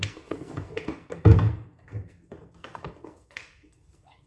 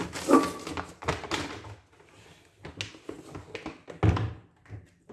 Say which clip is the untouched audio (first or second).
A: second